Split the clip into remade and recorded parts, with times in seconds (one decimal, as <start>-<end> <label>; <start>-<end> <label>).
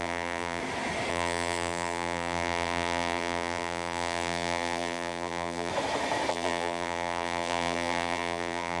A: 0.0-0.6 remade; 0.6-1.1 recorded; 1.1-5.7 remade; 5.7-6.3 recorded; 6.3-8.8 remade